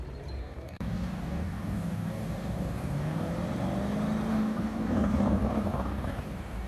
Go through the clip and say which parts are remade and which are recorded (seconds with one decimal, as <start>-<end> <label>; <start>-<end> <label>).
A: 0.0-0.4 recorded; 0.4-3.3 remade; 3.3-4.3 recorded; 4.3-6.7 remade